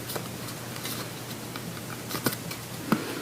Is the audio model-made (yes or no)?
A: no